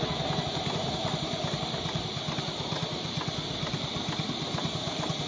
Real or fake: real